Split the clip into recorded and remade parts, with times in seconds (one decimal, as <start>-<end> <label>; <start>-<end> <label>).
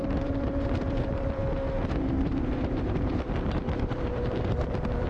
0.0-1.4 remade; 1.4-2.0 recorded; 2.0-5.1 remade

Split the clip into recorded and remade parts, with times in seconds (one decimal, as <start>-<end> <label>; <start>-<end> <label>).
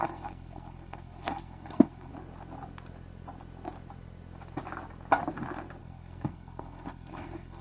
0.0-2.1 remade; 2.1-5.8 recorded; 5.8-7.6 remade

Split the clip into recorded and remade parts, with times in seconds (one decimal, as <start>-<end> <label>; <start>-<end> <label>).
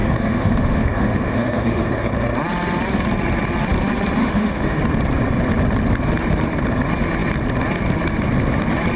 0.0-2.1 remade; 2.1-4.2 recorded; 4.2-4.8 remade; 4.8-9.0 recorded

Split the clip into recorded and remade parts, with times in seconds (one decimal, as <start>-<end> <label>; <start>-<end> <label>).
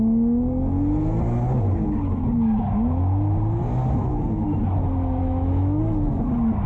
0.0-5.2 recorded; 5.2-5.8 remade; 5.8-6.7 recorded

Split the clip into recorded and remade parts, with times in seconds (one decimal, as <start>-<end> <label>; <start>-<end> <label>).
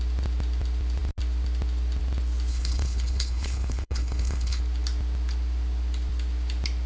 0.0-2.5 recorded; 2.5-4.6 remade; 4.6-6.9 recorded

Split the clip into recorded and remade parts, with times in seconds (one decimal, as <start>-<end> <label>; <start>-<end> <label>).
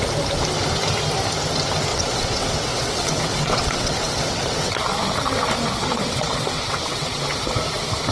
0.0-1.9 recorded; 1.9-4.7 remade; 4.7-5.8 recorded; 5.8-7.1 remade; 7.1-8.1 recorded